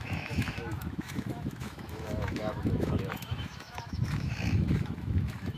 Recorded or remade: remade